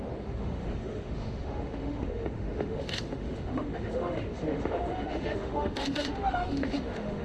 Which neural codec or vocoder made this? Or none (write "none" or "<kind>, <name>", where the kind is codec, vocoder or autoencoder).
autoencoder, DAC-VAE